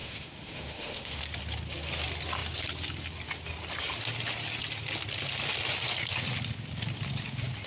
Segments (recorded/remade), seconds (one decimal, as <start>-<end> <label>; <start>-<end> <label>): 0.0-1.2 remade; 1.2-7.7 recorded